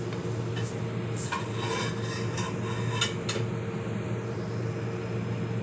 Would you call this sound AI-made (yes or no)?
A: no